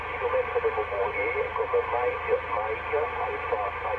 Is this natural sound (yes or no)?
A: yes